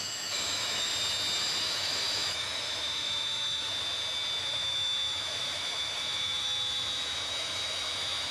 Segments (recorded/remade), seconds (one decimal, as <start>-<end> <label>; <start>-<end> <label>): 0.0-0.9 remade; 0.9-1.6 recorded; 1.6-3.7 remade; 3.7-4.4 recorded; 4.4-8.3 remade